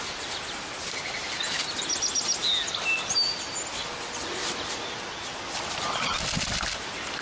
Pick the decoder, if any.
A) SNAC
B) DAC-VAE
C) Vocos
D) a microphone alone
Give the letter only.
D